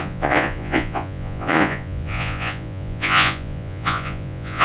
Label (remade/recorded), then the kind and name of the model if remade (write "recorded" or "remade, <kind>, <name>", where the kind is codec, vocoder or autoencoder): remade, vocoder, Vocos